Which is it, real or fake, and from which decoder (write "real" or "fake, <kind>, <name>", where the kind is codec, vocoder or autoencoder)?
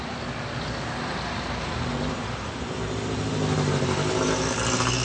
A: real